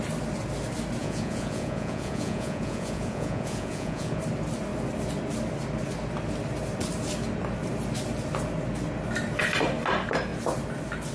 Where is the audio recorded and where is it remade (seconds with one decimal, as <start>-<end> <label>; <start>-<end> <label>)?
0.0-1.0 recorded; 1.0-4.2 remade; 4.2-11.1 recorded